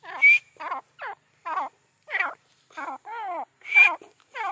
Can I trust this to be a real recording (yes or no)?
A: yes